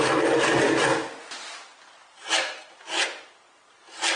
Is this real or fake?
real